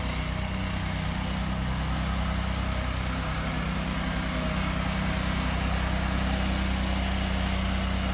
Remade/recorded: recorded